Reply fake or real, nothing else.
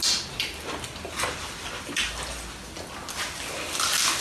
real